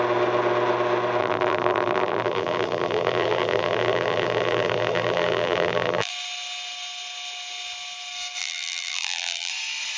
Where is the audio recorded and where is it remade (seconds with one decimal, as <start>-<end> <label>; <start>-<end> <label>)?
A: 0.0-1.2 recorded; 1.2-6.1 remade; 6.1-8.4 recorded; 8.4-9.5 remade; 9.5-10.0 recorded